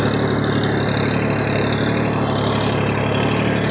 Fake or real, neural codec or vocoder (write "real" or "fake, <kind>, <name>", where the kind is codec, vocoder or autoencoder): real